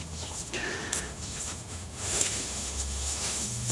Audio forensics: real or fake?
fake